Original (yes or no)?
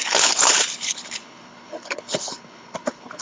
no